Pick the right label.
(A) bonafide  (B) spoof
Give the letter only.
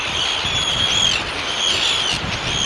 A